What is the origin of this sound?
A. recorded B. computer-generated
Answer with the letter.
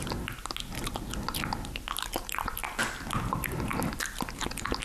A